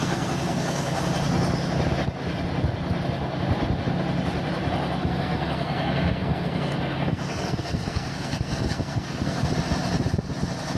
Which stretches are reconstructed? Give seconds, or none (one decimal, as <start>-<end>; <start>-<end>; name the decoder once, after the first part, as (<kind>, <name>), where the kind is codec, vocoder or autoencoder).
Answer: 0.0-1.0 (codec, SNAC); 5.0-9.5